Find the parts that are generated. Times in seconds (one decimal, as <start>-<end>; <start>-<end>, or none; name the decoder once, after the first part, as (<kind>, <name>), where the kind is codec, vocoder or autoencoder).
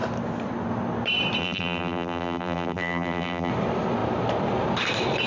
1.4-3.5 (vocoder, BigVGAN v2)